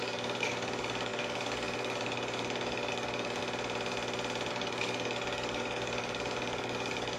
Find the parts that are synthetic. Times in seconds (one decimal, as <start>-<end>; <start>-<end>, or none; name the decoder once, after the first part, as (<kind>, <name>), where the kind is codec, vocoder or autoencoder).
0.0-3.4 (codec, DAC); 4.5-7.2